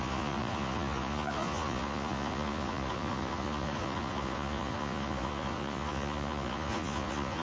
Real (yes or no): no